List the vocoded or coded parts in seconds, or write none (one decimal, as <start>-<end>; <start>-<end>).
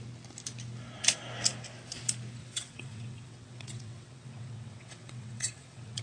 2.4-6.0